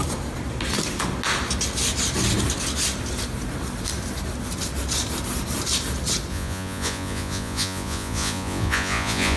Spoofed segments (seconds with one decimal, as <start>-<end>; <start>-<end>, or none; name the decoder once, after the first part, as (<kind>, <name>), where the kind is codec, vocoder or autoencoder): 6.3-9.4 (vocoder, Vocos)